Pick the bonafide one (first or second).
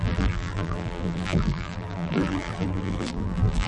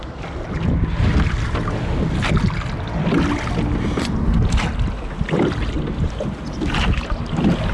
second